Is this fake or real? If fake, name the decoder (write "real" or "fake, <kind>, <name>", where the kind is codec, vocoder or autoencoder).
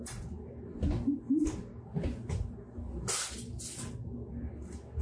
real